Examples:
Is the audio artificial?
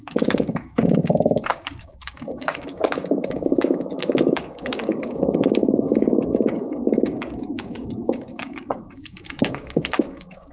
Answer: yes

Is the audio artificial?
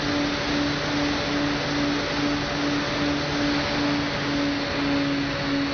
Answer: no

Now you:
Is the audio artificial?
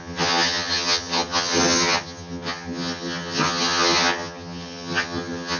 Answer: yes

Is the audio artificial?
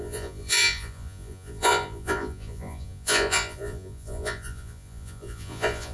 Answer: yes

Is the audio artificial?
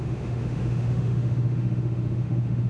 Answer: yes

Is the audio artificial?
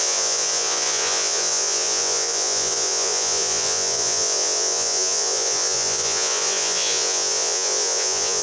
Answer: yes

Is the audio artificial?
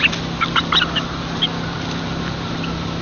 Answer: no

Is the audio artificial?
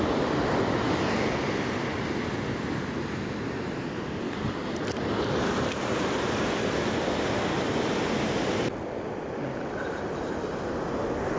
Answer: no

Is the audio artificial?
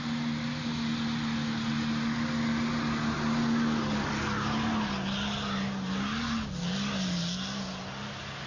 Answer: no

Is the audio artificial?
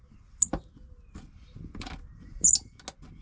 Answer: no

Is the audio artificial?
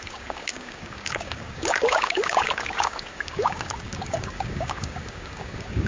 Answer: yes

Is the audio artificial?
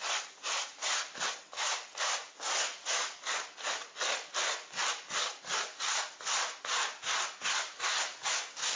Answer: yes